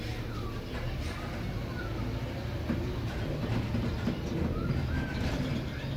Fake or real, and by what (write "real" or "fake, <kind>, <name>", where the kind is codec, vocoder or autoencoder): real